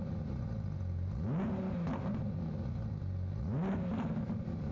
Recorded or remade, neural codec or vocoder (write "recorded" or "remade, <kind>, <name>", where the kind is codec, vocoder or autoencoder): recorded